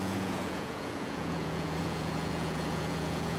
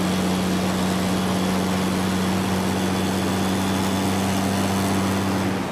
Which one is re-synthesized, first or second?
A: first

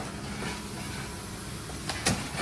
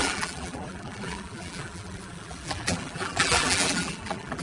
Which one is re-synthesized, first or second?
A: second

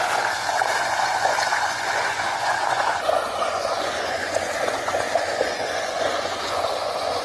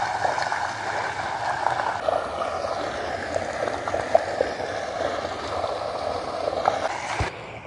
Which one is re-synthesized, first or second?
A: first